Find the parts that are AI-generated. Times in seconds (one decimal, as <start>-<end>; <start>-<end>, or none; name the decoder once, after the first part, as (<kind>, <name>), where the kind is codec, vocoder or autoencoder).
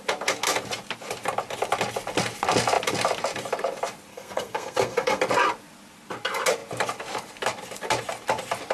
4.1-5.2 (codec, SNAC)